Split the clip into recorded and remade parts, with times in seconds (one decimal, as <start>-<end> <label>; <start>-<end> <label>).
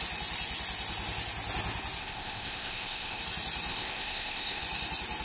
0.0-2.0 recorded; 2.0-3.2 remade; 3.2-3.7 recorded; 3.7-4.6 remade; 4.6-5.2 recorded